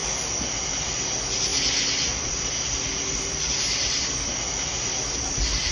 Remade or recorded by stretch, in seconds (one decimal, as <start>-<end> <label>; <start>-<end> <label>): 0.0-5.7 recorded